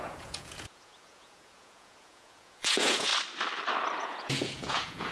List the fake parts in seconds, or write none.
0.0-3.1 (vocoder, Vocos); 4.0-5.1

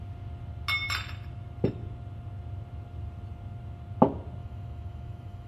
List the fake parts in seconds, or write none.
4.4-5.5 (autoencoder, DAC-VAE)